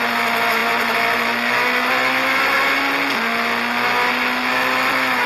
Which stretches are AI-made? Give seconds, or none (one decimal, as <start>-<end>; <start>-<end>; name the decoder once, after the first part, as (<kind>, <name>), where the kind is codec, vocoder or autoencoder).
none